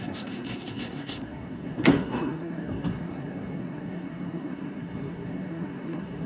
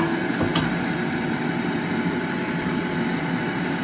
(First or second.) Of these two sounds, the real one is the second